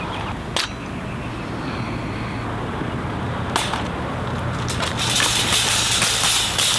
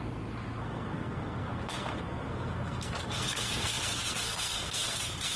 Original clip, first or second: first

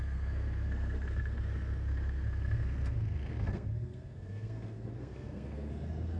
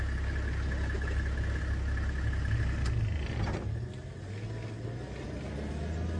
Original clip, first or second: second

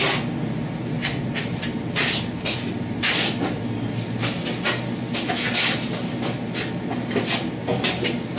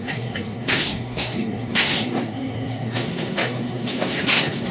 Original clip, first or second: first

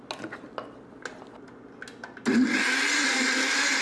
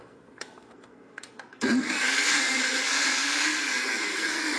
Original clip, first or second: first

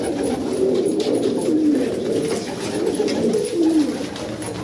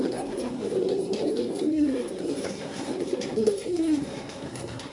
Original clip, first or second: first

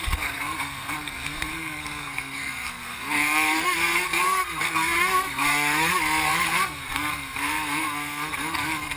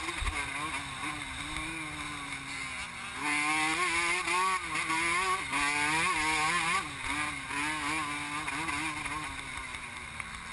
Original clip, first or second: second